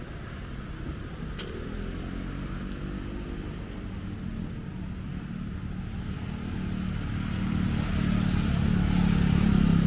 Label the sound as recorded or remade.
recorded